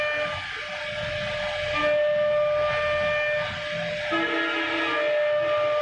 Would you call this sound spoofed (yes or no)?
no